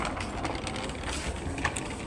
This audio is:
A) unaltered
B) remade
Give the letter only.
A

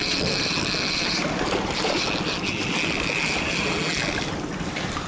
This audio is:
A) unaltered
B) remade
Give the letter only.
A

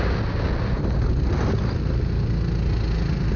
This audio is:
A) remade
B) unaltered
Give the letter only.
B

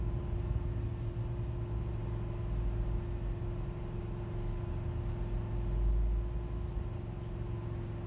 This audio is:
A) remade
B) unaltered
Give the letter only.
B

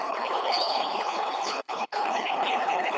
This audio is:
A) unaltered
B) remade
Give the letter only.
B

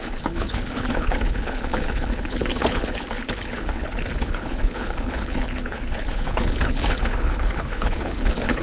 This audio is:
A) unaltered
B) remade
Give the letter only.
B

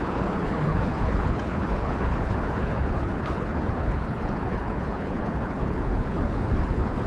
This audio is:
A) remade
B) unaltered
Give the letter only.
A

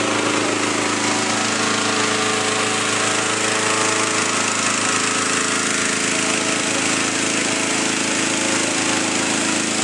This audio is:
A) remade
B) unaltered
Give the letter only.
B